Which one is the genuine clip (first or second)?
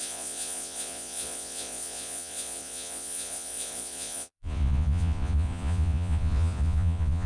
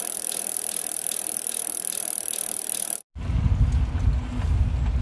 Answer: second